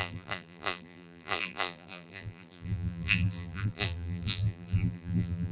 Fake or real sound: fake